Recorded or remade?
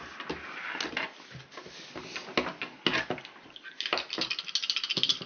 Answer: recorded